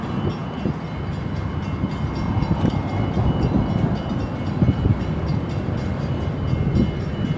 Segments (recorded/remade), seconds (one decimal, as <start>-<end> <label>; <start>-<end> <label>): 0.0-7.4 recorded